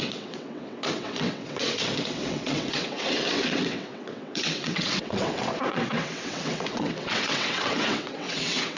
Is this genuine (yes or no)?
no